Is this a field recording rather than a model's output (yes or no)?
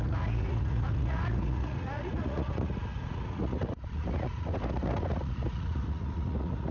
no